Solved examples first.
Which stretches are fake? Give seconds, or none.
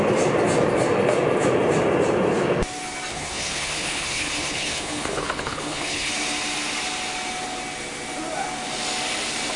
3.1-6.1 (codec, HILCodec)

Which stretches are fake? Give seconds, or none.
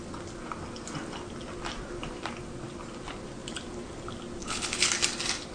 4.4-4.9 (codec, HILCodec)